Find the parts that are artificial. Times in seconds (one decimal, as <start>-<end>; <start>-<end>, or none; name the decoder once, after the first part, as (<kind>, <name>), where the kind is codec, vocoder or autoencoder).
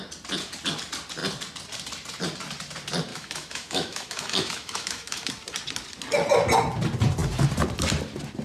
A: 3.1-5.3 (autoencoder, DAC-VAE)